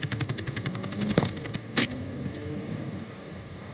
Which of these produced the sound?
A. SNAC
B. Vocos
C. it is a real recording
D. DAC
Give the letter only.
D